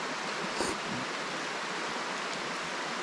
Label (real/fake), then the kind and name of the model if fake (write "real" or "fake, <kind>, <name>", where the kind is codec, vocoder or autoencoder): real